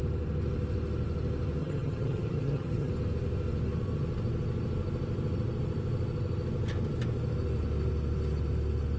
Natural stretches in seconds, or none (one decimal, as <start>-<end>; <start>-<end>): 0.0-1.6; 2.9-9.0